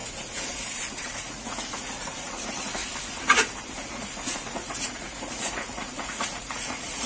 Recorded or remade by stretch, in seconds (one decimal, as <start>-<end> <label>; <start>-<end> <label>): 0.0-2.8 remade; 2.8-3.8 recorded; 3.8-7.1 remade